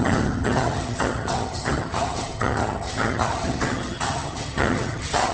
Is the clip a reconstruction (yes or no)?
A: yes